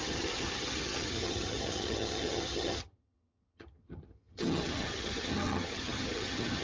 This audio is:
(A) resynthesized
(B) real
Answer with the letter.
A